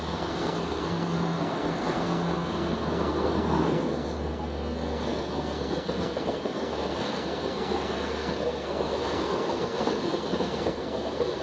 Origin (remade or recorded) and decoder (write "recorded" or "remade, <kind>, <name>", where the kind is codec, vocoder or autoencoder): remade, codec, SNAC